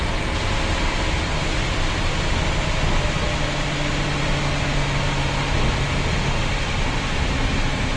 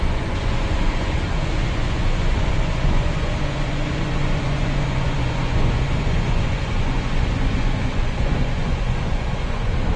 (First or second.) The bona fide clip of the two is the first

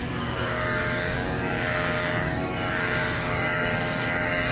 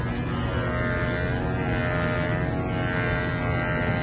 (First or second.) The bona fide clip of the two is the second